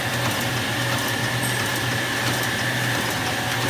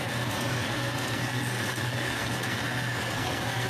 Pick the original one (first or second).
first